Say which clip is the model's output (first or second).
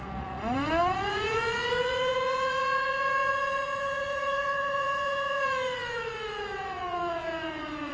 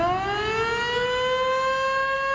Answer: first